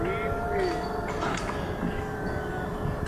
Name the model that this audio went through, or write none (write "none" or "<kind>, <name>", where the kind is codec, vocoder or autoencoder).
none